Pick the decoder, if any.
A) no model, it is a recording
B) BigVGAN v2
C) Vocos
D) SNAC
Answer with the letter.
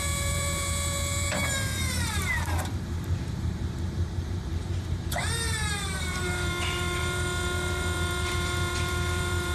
B